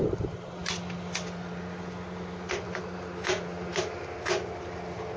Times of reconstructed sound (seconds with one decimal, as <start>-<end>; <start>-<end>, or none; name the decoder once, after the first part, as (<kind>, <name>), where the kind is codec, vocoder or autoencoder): none